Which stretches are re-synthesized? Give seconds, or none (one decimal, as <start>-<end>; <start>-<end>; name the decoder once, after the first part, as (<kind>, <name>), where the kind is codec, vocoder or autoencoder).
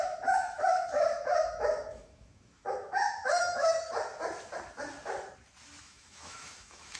0.0-3.9 (autoencoder, DAC-VAE); 5.8-7.0